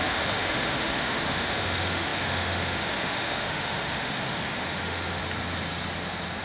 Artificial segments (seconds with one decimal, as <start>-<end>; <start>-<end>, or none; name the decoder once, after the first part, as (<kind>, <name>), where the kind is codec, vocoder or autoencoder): 0.0-5.2 (autoencoder, DAC-VAE)